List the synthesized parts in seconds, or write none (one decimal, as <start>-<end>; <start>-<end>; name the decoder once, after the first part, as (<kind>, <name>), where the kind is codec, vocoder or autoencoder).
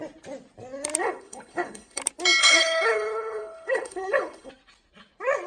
1.0-2.0 (codec, HILCodec); 2.4-4.5